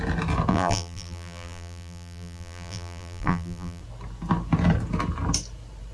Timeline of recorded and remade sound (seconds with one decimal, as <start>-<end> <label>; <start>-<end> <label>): 0.0-0.5 recorded; 0.5-3.8 remade; 3.8-5.9 recorded